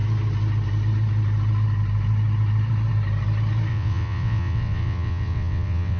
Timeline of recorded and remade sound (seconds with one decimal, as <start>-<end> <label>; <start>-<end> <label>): 0.0-3.7 recorded; 3.7-6.0 remade